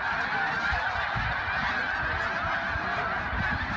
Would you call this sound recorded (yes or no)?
yes